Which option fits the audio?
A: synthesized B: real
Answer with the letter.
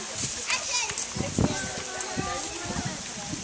B